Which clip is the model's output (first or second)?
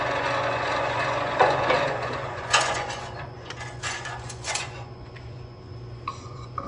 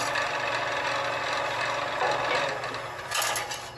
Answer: first